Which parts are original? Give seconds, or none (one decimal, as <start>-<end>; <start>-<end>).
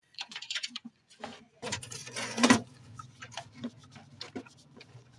3.8-4.4